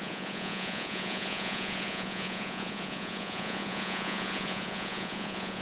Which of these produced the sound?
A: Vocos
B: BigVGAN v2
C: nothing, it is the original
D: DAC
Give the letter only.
A